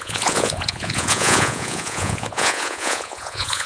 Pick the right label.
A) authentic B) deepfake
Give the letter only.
B